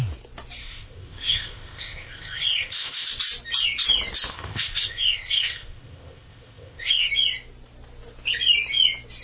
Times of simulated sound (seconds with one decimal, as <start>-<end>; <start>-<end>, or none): 0.6-3.1; 4.3-7.1